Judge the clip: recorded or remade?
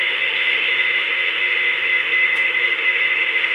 remade